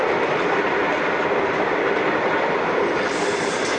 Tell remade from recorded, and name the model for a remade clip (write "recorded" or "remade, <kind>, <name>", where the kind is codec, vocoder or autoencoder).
recorded